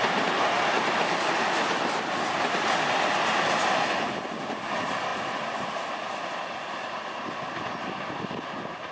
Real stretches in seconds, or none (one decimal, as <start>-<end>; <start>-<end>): 0.0-8.9